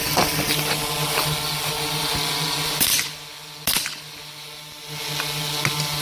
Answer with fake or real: real